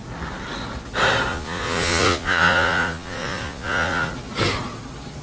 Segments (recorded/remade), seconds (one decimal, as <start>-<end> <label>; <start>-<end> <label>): 0.0-1.3 recorded; 1.3-4.1 remade; 4.1-5.2 recorded